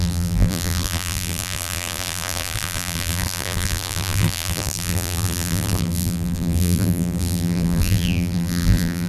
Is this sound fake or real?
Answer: fake